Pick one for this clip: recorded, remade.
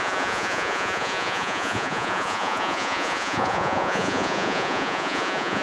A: remade